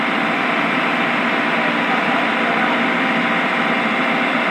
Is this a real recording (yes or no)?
yes